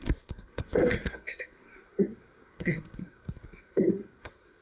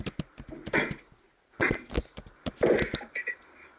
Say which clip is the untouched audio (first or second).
second